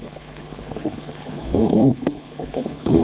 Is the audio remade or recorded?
remade